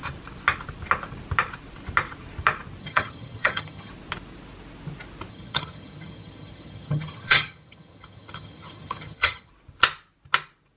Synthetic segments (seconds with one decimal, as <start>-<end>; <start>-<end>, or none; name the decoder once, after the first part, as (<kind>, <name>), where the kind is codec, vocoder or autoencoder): 2.8-3.9 (vocoder, HiFi-GAN); 5.3-9.5